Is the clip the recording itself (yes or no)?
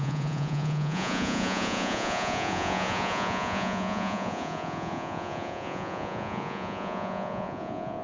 no